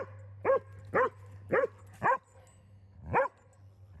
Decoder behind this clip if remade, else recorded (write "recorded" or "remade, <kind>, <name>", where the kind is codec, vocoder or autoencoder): recorded